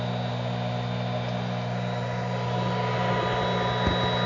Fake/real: real